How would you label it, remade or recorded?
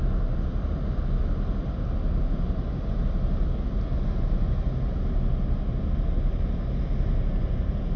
recorded